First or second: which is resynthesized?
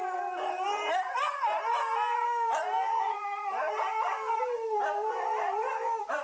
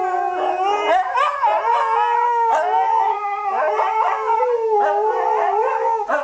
first